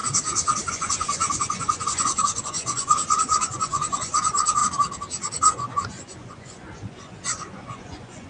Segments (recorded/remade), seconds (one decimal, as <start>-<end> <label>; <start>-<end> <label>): 0.0-0.7 recorded; 0.7-4.6 remade; 4.6-5.5 recorded; 5.5-8.3 remade